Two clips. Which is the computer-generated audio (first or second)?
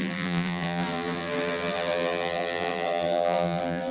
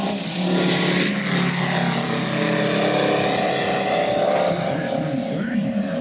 first